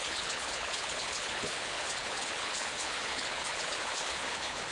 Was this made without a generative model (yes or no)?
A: no